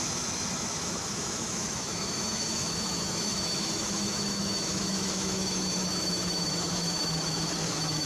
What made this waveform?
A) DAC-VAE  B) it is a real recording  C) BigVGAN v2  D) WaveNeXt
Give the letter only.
A